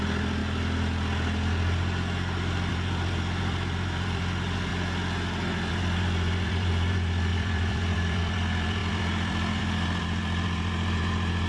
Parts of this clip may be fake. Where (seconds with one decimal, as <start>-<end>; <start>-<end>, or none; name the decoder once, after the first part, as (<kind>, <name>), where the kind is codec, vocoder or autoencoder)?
0.0-0.4 (vocoder, BigVGAN v2); 2.7-4.7; 5.7-11.5